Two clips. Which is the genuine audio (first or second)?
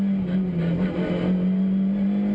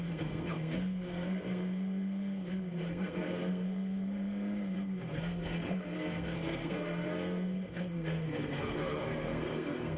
first